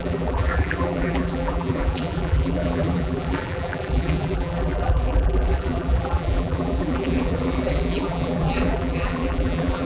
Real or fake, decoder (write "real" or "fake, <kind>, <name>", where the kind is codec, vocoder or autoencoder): fake, vocoder, BigVGAN v2